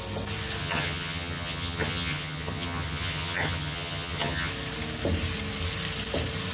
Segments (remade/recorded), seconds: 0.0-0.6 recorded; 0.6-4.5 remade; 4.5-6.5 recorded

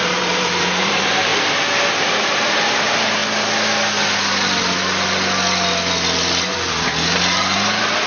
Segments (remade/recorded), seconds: 0.0-1.3 remade; 1.3-1.9 recorded; 1.9-3.2 remade; 3.2-6.7 recorded; 6.7-8.1 remade

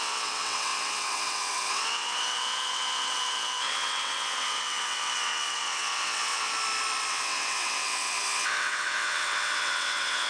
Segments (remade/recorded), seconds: 0.0-6.5 remade; 6.5-7.1 recorded; 7.1-10.3 remade

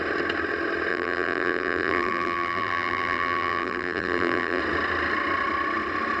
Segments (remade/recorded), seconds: 0.0-0.9 recorded; 0.9-4.6 remade; 4.6-6.2 recorded

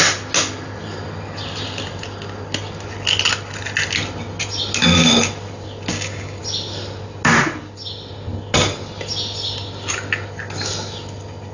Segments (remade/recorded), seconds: 0.0-5.9 recorded; 5.9-6.4 remade; 6.4-11.5 recorded

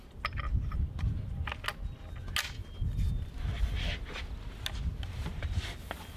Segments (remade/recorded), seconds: 0.0-4.9 recorded; 4.9-5.6 remade; 5.6-6.2 recorded

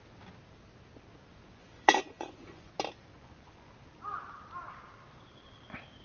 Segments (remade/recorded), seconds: 0.0-1.3 recorded; 1.3-2.7 remade; 2.7-3.1 recorded; 3.1-3.7 remade; 3.7-6.0 recorded